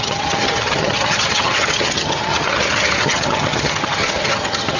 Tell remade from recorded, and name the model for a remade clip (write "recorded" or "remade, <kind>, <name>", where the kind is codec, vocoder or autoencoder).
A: remade, vocoder, HiFi-GAN